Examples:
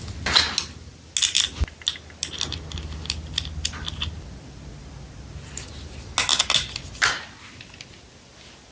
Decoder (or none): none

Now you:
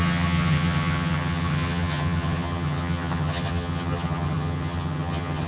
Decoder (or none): vocoder, HiFi-GAN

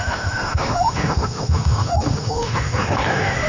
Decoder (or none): autoencoder, DAC-VAE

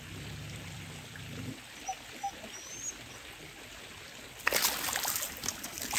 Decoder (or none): none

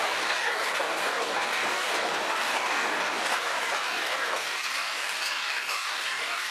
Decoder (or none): codec, DAC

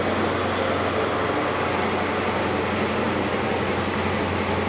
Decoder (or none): none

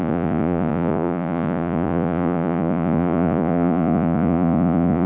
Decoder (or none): vocoder, Vocos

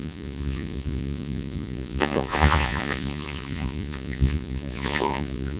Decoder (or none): vocoder, Vocos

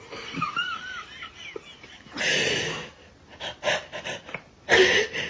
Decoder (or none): none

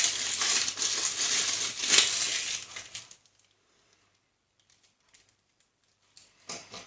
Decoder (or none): none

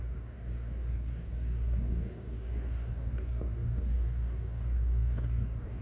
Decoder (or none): codec, DAC